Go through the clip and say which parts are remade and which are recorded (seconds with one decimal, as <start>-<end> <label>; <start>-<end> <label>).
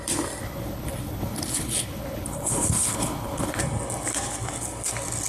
0.0-0.4 recorded; 0.4-3.6 remade; 3.6-5.3 recorded